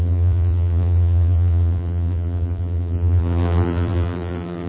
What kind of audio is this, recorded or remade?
remade